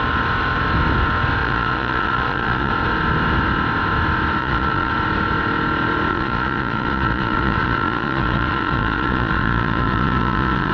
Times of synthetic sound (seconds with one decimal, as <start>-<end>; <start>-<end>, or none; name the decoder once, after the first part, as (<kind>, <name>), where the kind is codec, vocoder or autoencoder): 1.4-2.7 (vocoder, Vocos); 4.4-4.9; 6.1-10.7